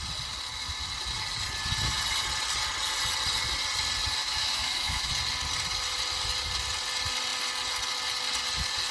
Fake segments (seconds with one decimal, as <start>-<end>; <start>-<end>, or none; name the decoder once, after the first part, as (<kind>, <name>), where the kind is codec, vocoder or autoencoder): 4.2-5.1 (autoencoder, DAC-VAE)

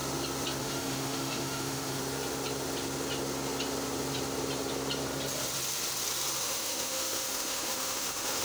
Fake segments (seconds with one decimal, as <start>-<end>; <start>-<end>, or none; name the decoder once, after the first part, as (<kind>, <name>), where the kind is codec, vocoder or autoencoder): 0.6-2.0 (autoencoder, DAC-VAE); 6.4-8.4

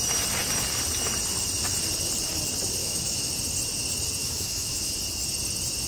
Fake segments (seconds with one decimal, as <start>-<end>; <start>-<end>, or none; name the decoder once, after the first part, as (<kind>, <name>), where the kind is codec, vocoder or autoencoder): 2.8-3.3 (autoencoder, DAC-VAE); 4.2-4.9

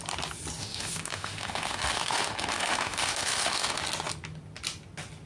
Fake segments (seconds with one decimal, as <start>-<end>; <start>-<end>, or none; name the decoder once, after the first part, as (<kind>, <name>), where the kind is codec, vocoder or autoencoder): 0.6-3.8 (autoencoder, DAC-VAE)

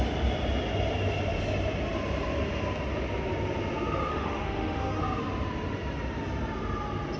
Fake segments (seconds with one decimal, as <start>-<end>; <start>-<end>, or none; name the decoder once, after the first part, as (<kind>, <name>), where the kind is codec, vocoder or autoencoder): 4.1-5.0 (autoencoder, DAC-VAE)

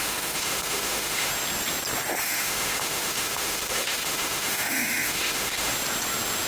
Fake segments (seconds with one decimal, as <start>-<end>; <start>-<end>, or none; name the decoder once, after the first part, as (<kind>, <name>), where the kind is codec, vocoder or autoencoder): 0.0-1.3 (autoencoder, DAC-VAE); 2.2-5.7

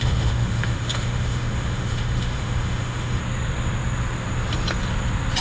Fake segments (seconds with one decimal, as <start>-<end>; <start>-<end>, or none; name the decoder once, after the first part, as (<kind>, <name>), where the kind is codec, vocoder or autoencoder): 0.0-3.2 (autoencoder, DAC-VAE)